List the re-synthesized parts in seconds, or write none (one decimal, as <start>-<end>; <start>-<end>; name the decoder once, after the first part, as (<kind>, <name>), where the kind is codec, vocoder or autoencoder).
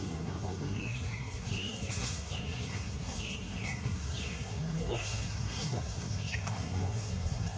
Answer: 0.0-7.6 (codec, SNAC)